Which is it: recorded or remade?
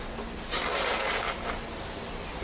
recorded